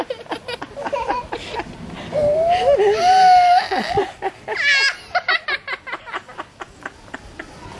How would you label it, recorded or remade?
recorded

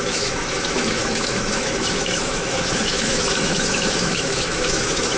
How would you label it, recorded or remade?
remade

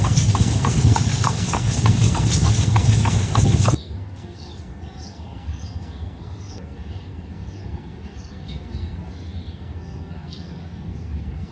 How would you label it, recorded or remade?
remade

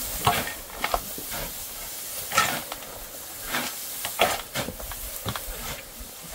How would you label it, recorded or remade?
recorded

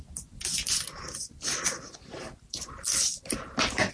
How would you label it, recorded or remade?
recorded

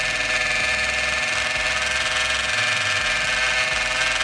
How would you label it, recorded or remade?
recorded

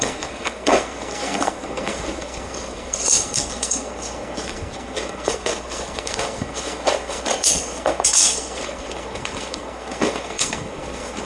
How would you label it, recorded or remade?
remade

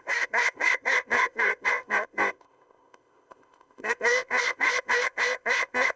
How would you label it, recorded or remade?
remade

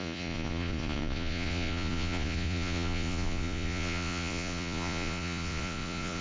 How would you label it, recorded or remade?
remade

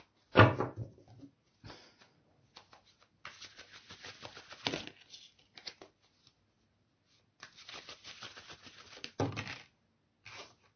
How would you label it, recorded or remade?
recorded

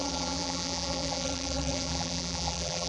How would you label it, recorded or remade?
remade